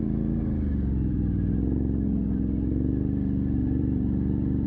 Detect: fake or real fake